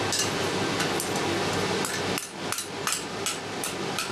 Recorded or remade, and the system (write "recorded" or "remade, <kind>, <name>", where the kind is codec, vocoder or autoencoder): recorded